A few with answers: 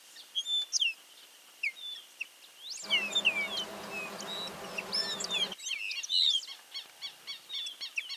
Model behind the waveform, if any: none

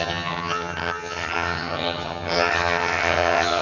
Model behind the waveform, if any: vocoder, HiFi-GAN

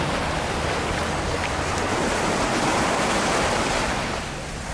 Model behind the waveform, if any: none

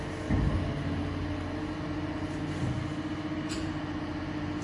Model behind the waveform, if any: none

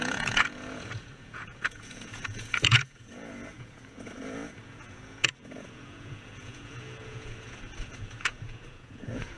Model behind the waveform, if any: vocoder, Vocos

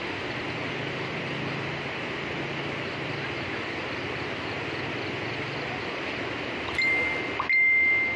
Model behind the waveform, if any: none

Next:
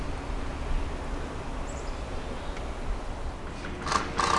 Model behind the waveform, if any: none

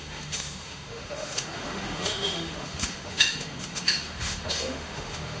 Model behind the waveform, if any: autoencoder, DAC-VAE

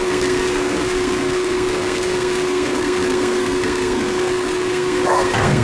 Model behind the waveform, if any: codec, SNAC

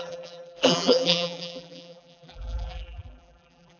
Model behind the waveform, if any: vocoder, BigVGAN v2